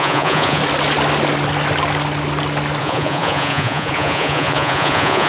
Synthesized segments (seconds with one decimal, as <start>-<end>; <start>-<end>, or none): 0.0-0.6; 2.8-5.3